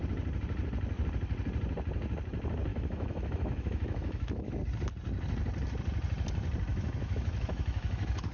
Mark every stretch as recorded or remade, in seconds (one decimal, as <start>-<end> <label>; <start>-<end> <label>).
0.0-2.7 recorded; 2.7-4.6 remade; 4.6-6.7 recorded; 6.7-8.3 remade